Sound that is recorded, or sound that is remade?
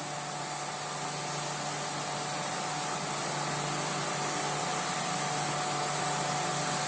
recorded